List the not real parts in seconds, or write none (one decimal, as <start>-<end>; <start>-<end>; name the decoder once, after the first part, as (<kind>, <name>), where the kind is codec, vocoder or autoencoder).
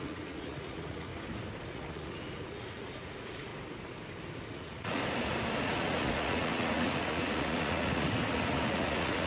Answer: 0.0-1.1 (vocoder, Vocos); 1.7-3.5; 4.5-5.0; 5.6-9.3